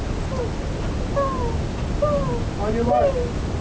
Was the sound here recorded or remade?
recorded